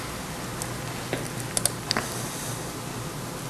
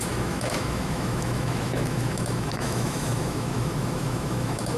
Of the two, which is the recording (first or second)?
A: first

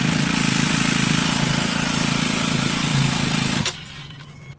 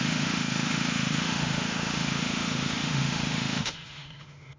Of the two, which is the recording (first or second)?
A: first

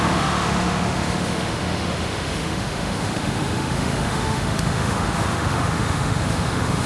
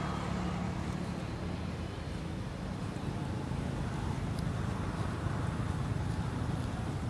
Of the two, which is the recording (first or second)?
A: second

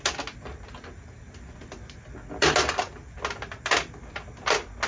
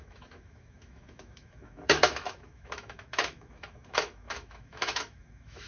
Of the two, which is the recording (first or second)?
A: first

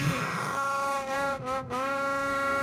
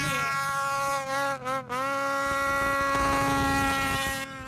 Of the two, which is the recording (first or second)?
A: second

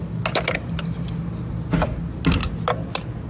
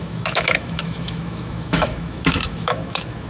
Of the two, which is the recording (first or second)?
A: first